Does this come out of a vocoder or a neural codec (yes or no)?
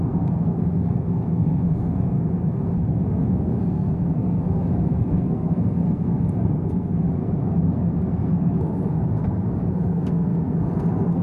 yes